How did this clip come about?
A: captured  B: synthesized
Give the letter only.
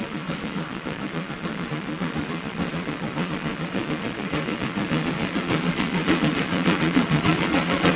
B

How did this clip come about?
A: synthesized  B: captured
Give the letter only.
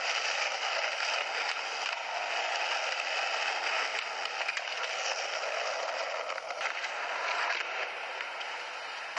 B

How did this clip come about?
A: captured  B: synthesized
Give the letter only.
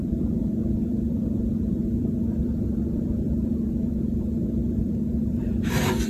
B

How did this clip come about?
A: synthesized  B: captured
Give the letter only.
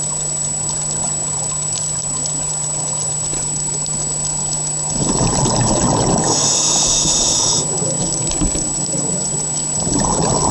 B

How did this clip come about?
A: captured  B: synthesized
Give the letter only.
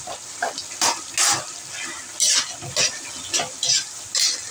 A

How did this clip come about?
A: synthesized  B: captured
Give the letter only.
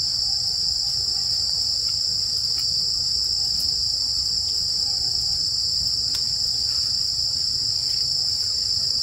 B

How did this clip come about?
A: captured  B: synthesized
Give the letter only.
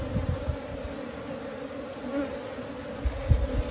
A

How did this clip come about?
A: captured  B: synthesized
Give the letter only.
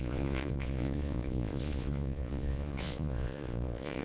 B